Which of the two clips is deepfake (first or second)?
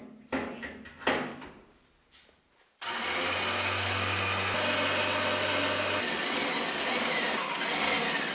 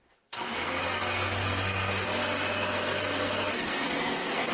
second